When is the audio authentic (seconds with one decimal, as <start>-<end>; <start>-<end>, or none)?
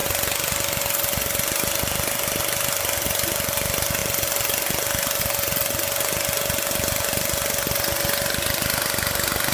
0.0-9.5